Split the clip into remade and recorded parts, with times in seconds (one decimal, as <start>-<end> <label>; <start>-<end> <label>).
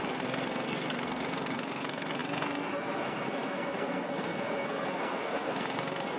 0.0-6.2 remade